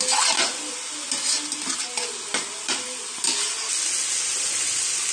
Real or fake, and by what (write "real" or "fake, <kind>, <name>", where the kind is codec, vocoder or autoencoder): real